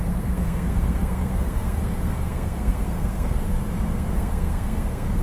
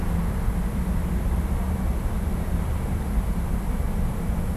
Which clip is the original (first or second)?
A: second